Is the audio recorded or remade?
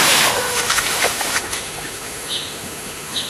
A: remade